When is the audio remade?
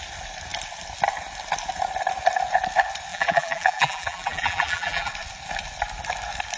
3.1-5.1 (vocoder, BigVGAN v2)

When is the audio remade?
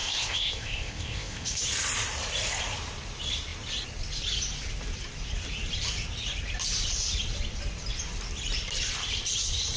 0.0-1.6 (codec, ZipCodec)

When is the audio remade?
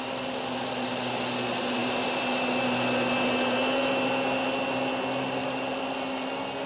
none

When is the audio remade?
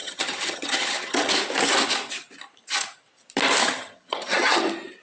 0.0-1.3 (vocoder, HiFi-GAN); 3.6-4.6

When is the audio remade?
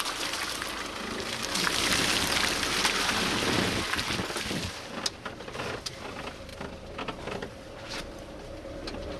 none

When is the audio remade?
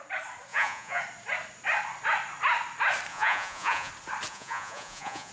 0.5-1.0 (vocoder, Vocos); 3.1-3.9; 4.3-5.3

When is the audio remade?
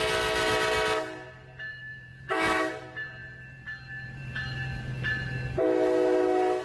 1.7-2.7 (autoencoder, DAC-VAE)